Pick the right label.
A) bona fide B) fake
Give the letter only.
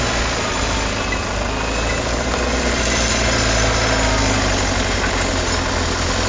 A